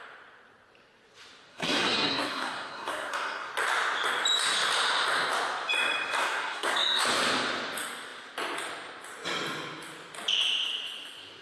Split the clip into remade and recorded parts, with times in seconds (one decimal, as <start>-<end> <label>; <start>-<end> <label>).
0.0-1.5 recorded; 1.5-3.5 remade; 3.5-6.2 recorded; 6.2-7.0 remade; 7.0-11.4 recorded